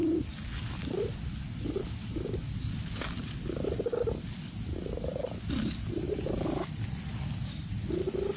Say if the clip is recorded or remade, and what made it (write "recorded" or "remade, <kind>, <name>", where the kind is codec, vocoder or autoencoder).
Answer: recorded